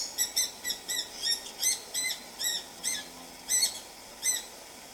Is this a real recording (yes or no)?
yes